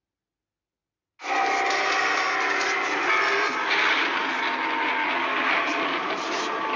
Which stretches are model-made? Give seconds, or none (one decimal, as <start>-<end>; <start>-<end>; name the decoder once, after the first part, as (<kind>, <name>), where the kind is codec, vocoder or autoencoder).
none